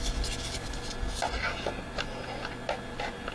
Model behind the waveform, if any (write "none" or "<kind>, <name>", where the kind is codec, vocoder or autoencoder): none